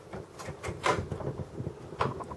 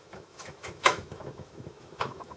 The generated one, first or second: second